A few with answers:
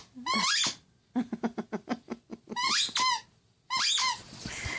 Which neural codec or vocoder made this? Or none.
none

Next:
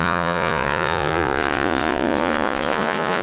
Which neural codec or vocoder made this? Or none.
vocoder, Vocos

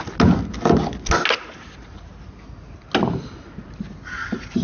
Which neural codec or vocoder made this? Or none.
none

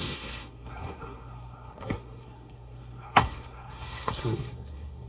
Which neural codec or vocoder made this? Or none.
codec, SNAC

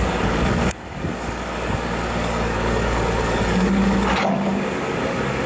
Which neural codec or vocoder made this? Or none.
codec, DAC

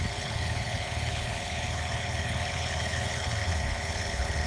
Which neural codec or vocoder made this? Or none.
codec, HILCodec